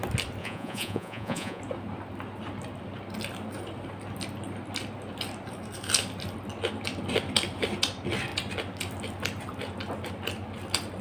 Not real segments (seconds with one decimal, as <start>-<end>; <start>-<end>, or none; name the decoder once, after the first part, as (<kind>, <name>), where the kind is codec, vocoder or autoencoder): 0.4-1.6 (vocoder, Vocos)